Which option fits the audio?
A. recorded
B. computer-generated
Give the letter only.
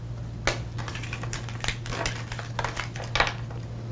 A